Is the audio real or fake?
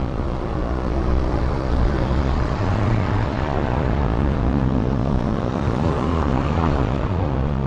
fake